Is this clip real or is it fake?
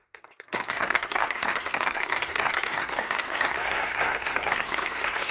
fake